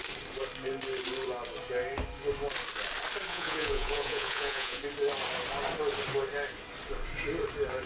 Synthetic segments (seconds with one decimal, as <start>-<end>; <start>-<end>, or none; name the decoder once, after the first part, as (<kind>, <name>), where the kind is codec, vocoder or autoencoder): 3.3-4.8 (vocoder, Vocos)